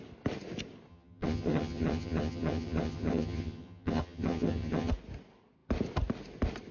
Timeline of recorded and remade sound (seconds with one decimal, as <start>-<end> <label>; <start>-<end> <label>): 0.0-0.9 recorded; 0.9-4.9 remade; 4.9-6.7 recorded